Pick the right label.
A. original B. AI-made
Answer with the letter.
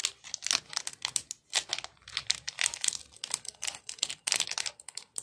A